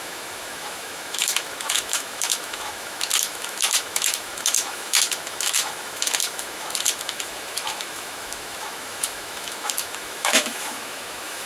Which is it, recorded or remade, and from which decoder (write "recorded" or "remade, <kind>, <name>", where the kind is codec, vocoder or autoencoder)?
remade, autoencoder, DAC-VAE